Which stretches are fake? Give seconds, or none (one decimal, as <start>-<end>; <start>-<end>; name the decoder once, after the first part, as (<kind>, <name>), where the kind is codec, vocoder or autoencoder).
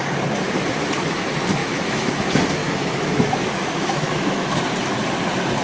1.6-2.1 (autoencoder, DAC-VAE); 2.6-4.6